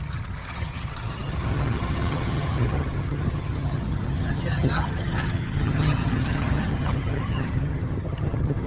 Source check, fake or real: fake